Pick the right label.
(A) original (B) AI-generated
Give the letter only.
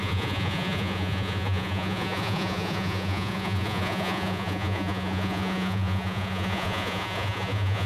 B